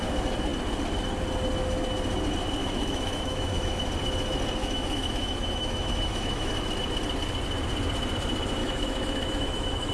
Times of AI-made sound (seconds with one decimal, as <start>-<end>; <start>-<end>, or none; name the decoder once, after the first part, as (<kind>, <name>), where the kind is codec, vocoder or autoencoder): 2.6-3.8 (autoencoder, DAC-VAE); 4.6-6.5; 8.6-9.9